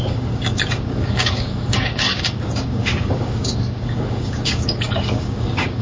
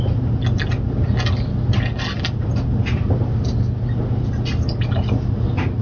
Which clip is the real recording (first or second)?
second